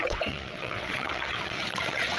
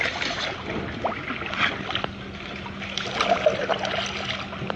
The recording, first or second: second